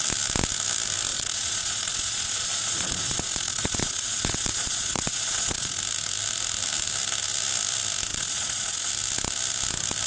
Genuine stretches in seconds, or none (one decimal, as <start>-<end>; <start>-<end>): 0.0-1.1; 5.8-8.1; 8.9-10.1